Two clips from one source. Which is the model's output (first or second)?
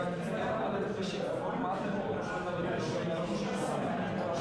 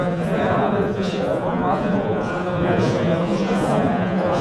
second